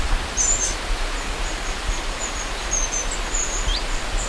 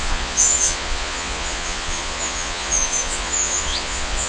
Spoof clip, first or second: second